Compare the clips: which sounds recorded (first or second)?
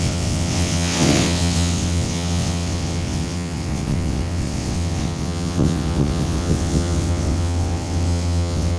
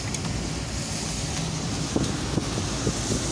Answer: second